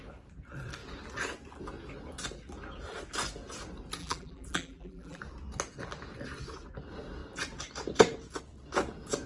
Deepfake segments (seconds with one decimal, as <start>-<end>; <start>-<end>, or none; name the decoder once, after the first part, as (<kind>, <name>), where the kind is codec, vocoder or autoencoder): 4.0-5.2 (vocoder, BigVGAN v2)